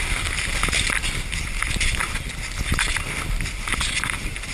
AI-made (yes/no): no